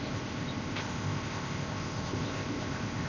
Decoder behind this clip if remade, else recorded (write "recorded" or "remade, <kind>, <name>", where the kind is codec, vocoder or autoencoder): remade, codec, ZipCodec